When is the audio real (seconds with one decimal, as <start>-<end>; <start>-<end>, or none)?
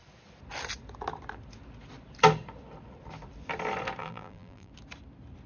0.0-4.0; 4.7-5.5